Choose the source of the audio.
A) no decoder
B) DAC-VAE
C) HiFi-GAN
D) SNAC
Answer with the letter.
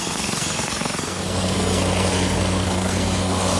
D